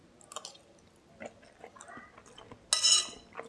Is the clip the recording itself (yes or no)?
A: yes